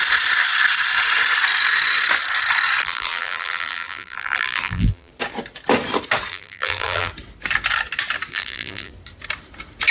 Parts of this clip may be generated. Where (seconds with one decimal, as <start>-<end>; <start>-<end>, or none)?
2.8-5.1; 6.3-7.1; 8.3-8.9